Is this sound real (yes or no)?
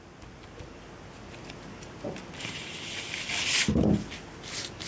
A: yes